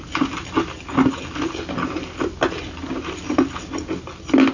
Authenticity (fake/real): real